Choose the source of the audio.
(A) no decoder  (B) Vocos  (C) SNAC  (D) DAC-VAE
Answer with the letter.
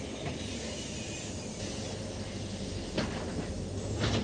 A